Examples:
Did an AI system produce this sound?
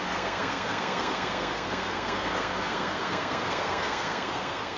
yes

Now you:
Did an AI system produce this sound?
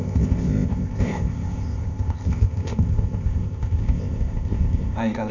yes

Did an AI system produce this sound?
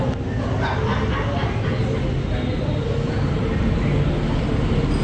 no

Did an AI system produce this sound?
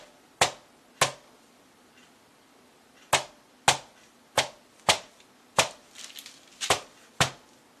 no